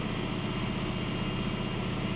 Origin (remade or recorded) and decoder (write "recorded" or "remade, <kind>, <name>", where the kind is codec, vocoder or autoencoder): recorded